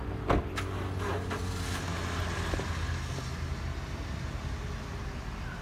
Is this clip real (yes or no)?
yes